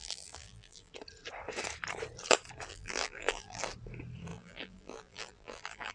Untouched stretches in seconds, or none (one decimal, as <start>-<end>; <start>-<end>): 0.9-2.7; 3.6-4.3